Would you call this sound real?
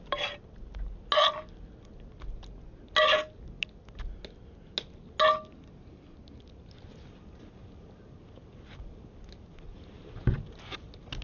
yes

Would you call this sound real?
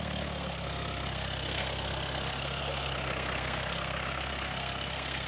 no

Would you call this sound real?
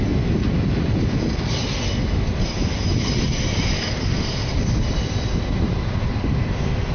yes